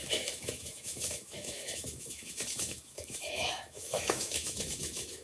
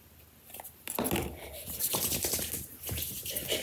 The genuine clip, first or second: second